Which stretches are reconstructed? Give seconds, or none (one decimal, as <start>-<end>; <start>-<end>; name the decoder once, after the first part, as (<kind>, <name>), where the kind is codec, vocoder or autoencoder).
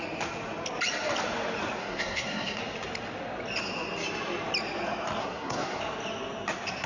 1.8-2.6 (codec, SNAC); 5.2-5.8